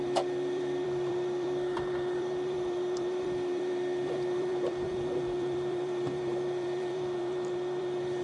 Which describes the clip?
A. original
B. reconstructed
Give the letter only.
B